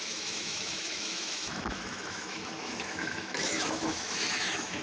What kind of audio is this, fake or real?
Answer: fake